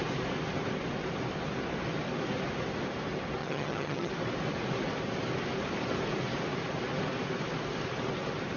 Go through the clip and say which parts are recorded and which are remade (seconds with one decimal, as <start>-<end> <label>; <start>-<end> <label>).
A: 0.0-3.4 recorded; 3.4-4.1 remade; 4.1-8.6 recorded

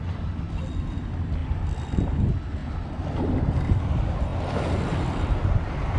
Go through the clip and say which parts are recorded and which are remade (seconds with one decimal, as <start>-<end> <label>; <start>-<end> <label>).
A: 0.0-6.0 recorded

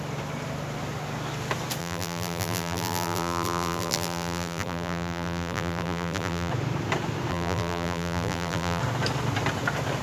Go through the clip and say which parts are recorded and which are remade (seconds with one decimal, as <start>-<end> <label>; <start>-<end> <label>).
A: 0.0-1.8 recorded; 1.8-6.5 remade; 6.5-7.3 recorded; 7.3-8.8 remade; 8.8-10.0 recorded

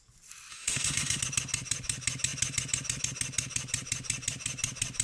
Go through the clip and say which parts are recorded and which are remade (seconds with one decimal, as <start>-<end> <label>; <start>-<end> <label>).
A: 0.0-0.5 recorded; 0.5-1.2 remade; 1.2-5.0 recorded

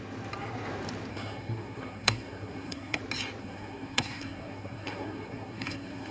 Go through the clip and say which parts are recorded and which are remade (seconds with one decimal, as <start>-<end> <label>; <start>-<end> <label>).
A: 0.0-1.1 recorded; 1.1-3.0 remade; 3.0-3.4 recorded; 3.4-6.1 remade